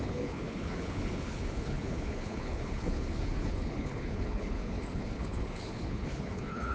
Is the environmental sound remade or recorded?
remade